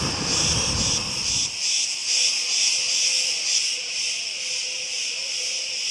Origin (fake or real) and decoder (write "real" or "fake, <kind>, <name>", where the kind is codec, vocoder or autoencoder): real